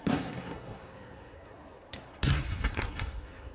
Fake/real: fake